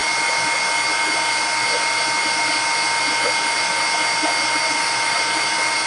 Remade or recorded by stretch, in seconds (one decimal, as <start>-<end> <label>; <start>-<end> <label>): 0.0-5.9 recorded